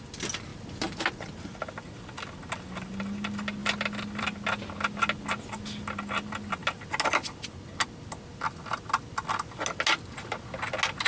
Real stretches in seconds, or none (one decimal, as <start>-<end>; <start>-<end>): 0.0-11.1